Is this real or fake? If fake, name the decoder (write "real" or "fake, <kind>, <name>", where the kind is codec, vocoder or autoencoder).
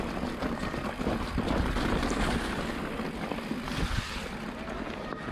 real